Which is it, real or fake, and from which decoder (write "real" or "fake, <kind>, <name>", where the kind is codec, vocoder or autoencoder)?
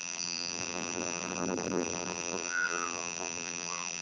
fake, vocoder, BigVGAN v2